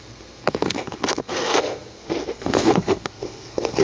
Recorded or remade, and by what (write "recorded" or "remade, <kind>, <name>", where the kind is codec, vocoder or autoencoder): remade, codec, SNAC